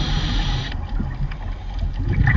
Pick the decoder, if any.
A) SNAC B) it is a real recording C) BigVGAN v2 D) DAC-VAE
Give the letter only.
B